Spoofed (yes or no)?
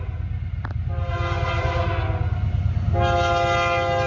no